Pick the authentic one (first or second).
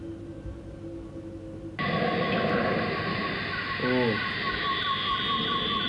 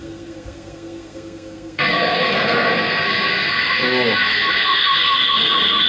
first